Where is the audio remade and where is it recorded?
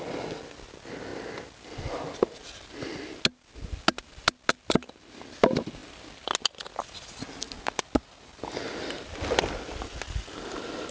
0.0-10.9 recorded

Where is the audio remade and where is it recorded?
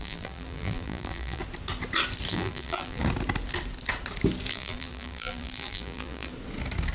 0.0-1.4 remade; 1.4-2.3 recorded; 2.3-3.0 remade; 3.0-4.5 recorded; 4.5-6.3 remade; 6.3-6.9 recorded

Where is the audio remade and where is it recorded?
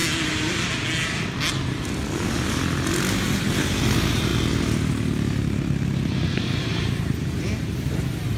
0.0-3.1 recorded; 3.1-4.3 remade; 4.3-6.3 recorded; 6.3-8.4 remade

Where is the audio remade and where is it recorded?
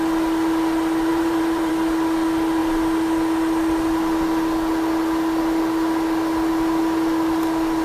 0.0-1.1 recorded; 1.1-1.7 remade; 1.7-7.8 recorded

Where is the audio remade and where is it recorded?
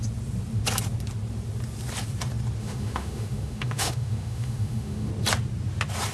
0.0-2.6 recorded; 2.6-5.1 remade; 5.1-6.1 recorded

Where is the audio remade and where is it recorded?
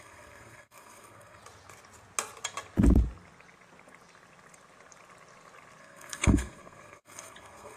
0.0-1.4 remade; 1.4-5.8 recorded; 5.8-7.8 remade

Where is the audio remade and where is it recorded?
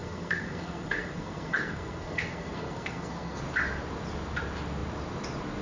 0.0-3.4 remade; 3.4-5.6 recorded